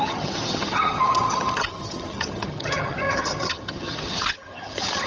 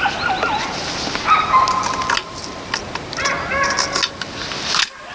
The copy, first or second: first